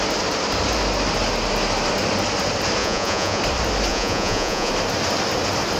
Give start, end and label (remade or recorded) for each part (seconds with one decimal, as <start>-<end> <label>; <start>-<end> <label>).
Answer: 0.0-2.8 recorded; 2.8-3.4 remade; 3.4-3.9 recorded; 3.9-4.7 remade; 4.7-5.8 recorded